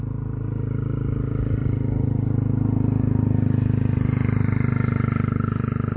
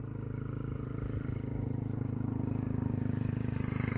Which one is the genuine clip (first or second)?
first